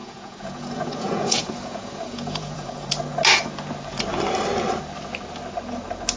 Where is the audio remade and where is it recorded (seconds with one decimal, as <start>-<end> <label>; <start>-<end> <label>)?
0.0-2.9 remade; 2.9-6.2 recorded